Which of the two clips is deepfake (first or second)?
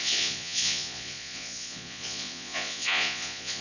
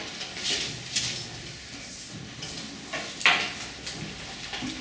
first